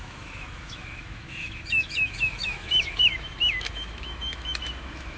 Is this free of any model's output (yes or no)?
no